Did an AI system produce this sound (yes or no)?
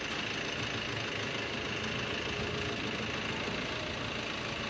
no